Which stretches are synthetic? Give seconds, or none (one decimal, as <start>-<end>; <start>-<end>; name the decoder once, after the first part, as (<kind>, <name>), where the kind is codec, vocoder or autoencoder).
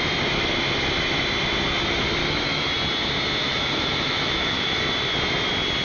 2.2-2.7 (autoencoder, DAC-VAE); 3.4-4.8